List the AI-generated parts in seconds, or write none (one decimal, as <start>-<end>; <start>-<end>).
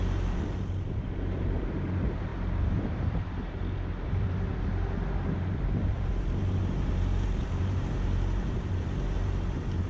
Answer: 0.0-9.9